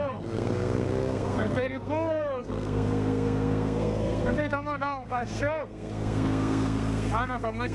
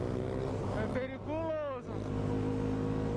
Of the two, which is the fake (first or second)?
first